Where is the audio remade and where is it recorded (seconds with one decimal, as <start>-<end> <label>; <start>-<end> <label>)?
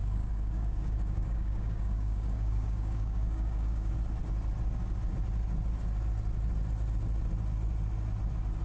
0.0-3.9 remade; 3.9-8.6 recorded